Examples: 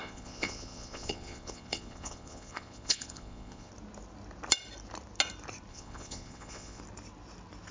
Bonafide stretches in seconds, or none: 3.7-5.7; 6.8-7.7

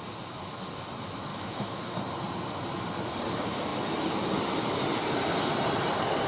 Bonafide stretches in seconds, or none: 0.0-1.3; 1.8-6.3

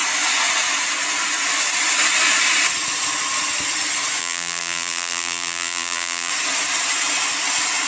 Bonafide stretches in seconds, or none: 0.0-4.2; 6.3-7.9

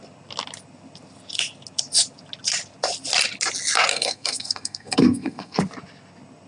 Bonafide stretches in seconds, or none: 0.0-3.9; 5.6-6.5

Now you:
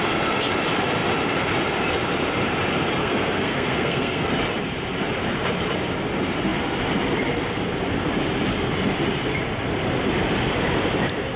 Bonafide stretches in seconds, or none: 0.0-3.0; 4.3-11.4